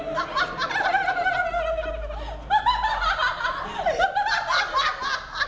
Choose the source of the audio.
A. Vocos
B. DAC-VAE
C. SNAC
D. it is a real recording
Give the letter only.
D